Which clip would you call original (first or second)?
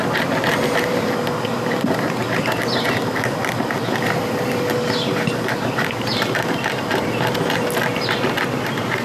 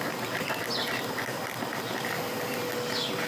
second